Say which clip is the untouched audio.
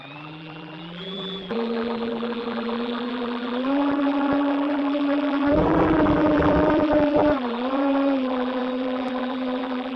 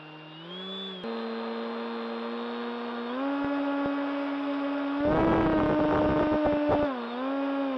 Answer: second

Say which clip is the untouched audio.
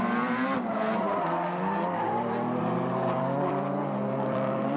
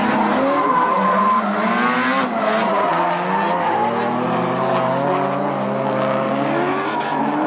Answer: second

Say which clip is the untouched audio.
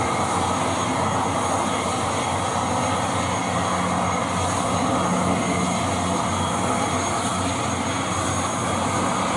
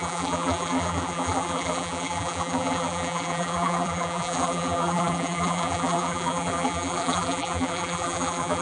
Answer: first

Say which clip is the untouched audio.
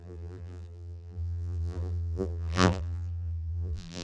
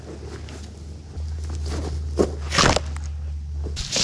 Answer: second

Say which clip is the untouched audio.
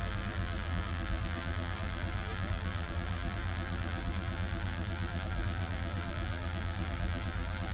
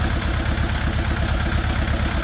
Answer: second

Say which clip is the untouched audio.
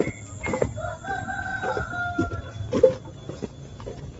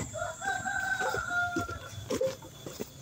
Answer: first